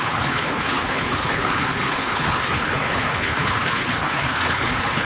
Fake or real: fake